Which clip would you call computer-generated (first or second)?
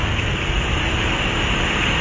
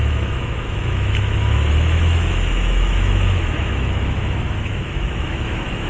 second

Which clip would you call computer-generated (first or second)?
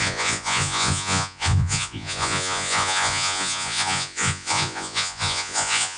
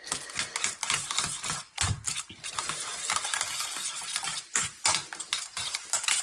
first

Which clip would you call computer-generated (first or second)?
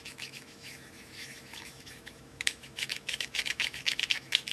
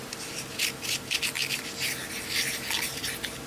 first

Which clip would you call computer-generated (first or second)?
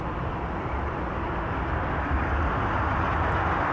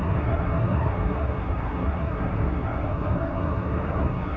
second